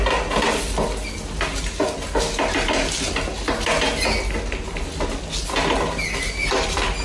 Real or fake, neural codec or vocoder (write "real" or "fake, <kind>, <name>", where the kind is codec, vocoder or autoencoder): real